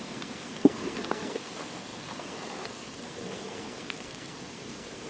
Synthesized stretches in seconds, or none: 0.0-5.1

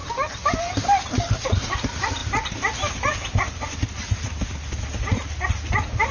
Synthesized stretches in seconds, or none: none

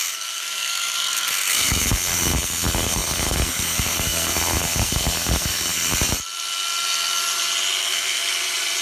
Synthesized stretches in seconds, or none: 0.0-5.9; 7.8-8.2

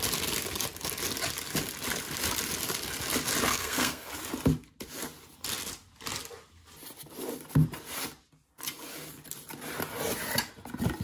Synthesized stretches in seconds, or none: 3.5-4.1

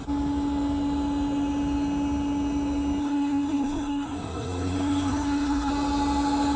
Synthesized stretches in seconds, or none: 3.0-5.7

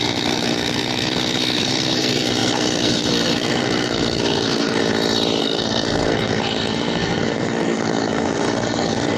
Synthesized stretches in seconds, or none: 0.0-4.8; 5.4-9.2

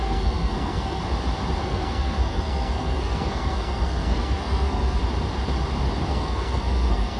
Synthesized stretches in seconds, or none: 0.0-1.0; 1.6-5.0; 6.1-7.2

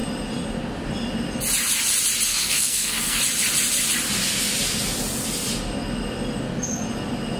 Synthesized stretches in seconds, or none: 2.3-3.2